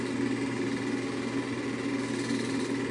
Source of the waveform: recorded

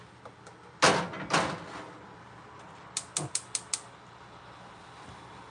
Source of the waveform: recorded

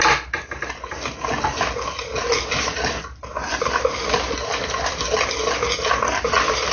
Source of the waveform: recorded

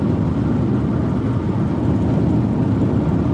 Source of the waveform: recorded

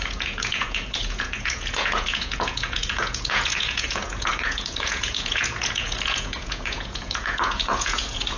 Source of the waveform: remade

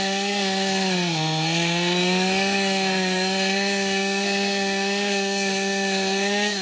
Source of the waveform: remade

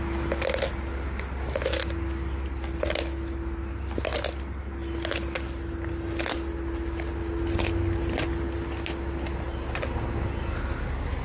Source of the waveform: recorded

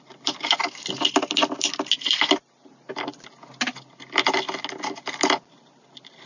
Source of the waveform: recorded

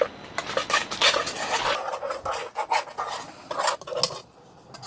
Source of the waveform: recorded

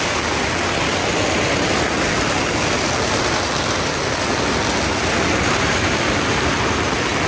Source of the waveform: recorded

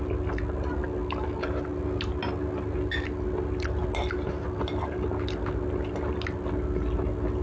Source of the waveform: recorded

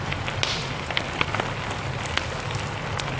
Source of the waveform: recorded